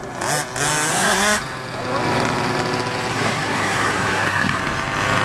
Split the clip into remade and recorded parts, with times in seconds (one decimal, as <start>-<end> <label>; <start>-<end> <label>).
0.0-0.9 recorded; 0.9-1.4 remade; 1.4-3.1 recorded; 3.1-4.6 remade; 4.6-5.2 recorded